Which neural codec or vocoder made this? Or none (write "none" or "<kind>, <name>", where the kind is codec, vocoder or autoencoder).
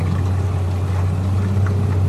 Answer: none